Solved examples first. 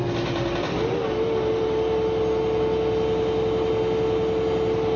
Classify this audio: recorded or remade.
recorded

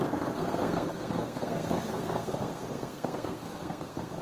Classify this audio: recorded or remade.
remade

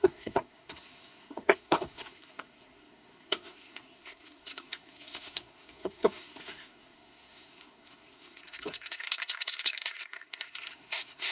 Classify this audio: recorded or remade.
remade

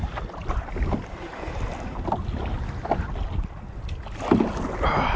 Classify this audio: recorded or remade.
recorded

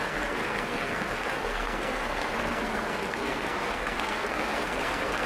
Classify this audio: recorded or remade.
remade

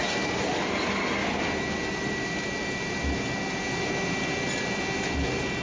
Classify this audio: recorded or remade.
recorded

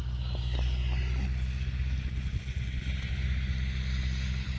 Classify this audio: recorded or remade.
recorded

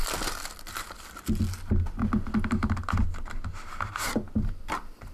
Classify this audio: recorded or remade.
recorded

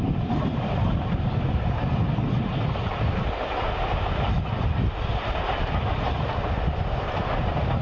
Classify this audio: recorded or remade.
recorded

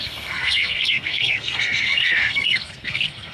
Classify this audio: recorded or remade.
remade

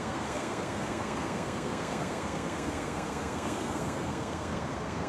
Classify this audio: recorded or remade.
remade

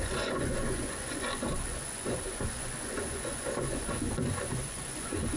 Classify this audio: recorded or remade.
remade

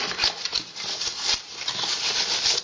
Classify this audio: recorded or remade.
recorded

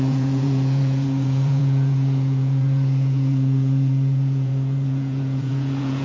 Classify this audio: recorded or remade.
remade